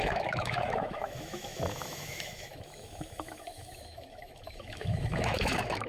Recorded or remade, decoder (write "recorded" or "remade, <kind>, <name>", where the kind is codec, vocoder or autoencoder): remade, autoencoder, DAC-VAE